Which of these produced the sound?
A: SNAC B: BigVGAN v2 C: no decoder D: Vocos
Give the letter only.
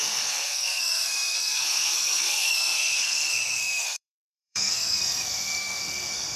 A